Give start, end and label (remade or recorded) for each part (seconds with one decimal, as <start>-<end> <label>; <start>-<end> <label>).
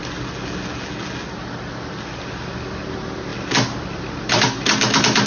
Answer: 0.0-5.3 recorded